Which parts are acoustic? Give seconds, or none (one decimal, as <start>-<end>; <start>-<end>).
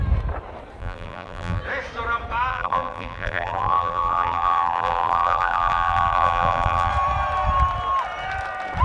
0.0-0.8; 1.6-2.5; 6.9-8.8